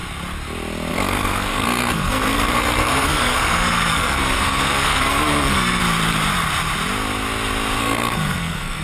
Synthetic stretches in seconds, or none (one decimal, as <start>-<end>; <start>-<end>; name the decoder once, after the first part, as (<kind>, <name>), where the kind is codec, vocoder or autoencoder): 0.9-5.8 (codec, SNAC); 7.8-8.8

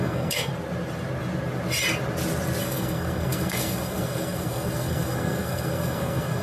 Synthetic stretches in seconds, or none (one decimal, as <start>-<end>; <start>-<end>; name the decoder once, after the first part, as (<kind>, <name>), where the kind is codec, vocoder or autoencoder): 0.0-0.5 (codec, SNAC); 2.6-6.4

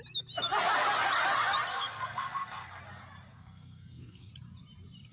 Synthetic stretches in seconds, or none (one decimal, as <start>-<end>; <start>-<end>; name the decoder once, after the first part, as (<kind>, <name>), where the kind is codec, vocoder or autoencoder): 1.7-2.8 (codec, SNAC); 3.3-4.3